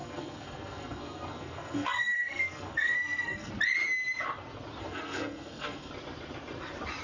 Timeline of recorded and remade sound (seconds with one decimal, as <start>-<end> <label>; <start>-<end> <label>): 0.0-3.5 remade; 3.5-4.8 recorded; 4.8-5.9 remade; 5.9-7.0 recorded